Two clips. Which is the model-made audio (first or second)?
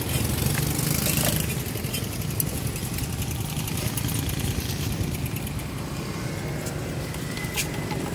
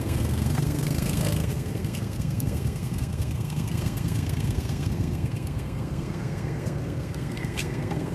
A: second